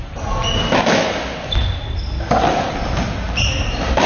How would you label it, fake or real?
real